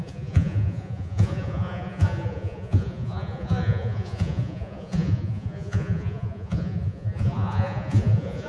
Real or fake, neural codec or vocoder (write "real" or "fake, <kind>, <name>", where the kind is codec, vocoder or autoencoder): fake, vocoder, Vocos